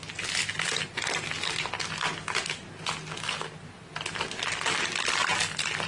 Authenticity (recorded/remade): recorded